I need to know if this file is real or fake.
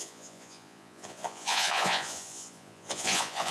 fake